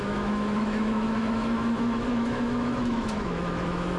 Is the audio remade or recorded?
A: remade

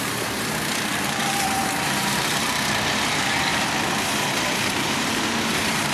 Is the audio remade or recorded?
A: remade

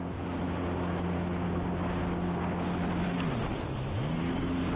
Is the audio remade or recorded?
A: recorded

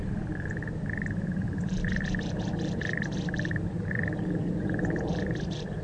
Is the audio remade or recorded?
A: remade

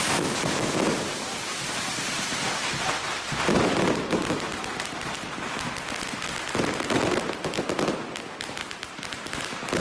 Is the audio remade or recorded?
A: recorded